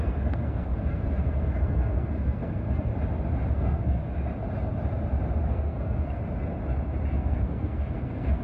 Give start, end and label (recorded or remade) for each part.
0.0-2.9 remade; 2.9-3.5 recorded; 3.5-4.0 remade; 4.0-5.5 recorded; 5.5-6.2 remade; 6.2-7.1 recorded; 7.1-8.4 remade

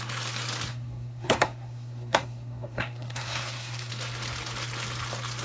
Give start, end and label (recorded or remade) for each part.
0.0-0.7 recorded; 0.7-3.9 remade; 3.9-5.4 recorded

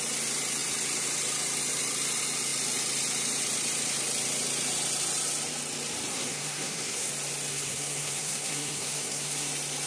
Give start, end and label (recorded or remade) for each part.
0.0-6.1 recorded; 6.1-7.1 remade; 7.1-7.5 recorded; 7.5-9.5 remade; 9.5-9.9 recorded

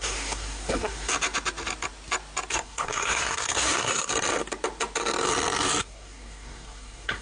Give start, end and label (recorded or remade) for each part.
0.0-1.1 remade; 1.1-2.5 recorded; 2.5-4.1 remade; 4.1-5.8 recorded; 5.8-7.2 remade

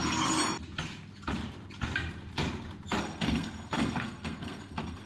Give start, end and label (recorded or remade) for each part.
0.0-0.4 remade; 0.4-3.0 recorded; 3.0-5.1 remade

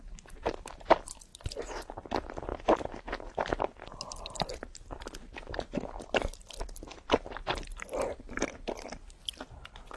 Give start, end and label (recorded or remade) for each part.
0.0-10.0 recorded

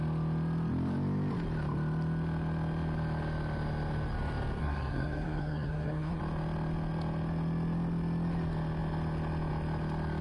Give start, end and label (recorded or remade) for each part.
0.0-4.6 recorded; 4.6-6.2 remade; 6.2-10.2 recorded

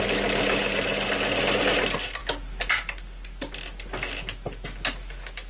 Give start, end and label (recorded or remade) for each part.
0.0-5.5 recorded